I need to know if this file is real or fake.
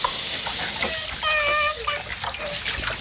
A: real